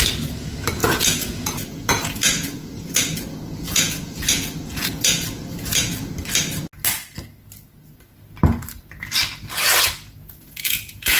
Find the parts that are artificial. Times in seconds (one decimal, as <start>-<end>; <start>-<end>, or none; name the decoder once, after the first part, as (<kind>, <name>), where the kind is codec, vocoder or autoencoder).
0.8-6.1 (vocoder, Vocos); 10.2-11.2